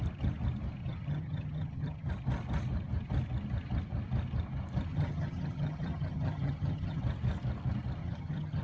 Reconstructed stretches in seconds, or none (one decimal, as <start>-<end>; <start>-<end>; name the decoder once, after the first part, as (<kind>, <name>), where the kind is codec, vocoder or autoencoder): 0.8-2.1 (vocoder, HiFi-GAN); 4.9-7.0; 8.0-8.6